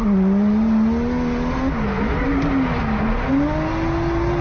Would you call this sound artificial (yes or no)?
no